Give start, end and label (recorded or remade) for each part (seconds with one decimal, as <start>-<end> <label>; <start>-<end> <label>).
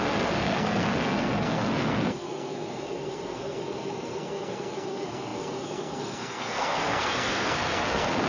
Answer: 0.0-8.3 remade